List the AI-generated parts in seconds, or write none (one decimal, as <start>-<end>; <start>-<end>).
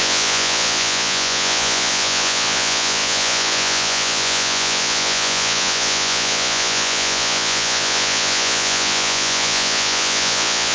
0.0-10.7